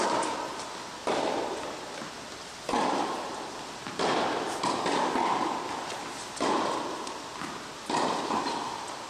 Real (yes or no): yes